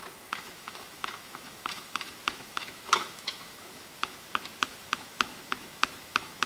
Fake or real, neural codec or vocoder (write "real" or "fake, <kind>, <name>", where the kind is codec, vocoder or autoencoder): fake, autoencoder, DAC-VAE